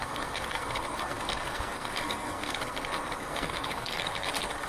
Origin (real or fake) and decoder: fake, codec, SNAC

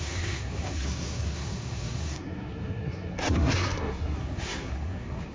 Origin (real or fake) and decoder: fake, codec, SNAC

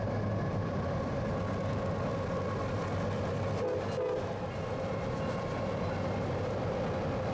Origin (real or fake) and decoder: real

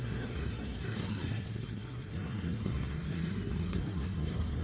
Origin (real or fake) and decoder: fake, codec, SNAC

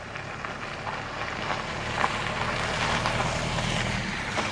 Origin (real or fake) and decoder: real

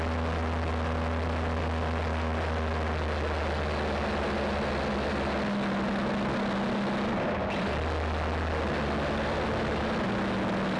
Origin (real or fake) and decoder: real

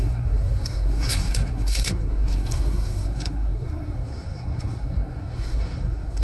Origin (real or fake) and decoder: fake, codec, SNAC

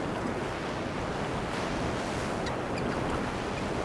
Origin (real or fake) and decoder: real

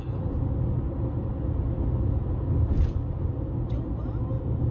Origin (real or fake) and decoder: real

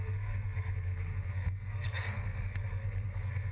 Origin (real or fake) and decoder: fake, codec, SNAC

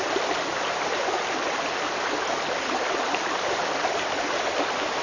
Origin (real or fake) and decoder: real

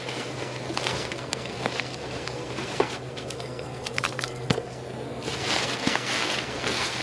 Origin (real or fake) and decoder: fake, codec, SNAC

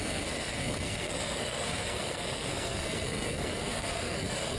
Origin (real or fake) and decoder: fake, codec, SNAC